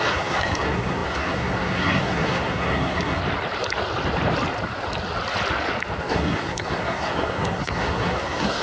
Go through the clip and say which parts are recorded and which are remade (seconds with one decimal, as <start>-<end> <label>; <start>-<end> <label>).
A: 0.0-3.2 remade; 3.2-6.0 recorded; 6.0-8.6 remade